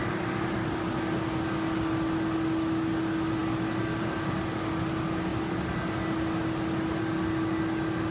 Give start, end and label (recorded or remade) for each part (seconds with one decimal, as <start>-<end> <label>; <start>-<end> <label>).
0.0-5.3 recorded; 5.3-5.8 remade; 5.8-8.1 recorded